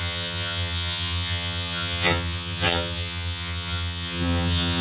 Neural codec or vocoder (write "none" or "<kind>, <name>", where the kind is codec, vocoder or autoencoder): vocoder, HiFi-GAN